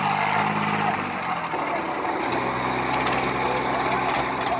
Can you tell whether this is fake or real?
real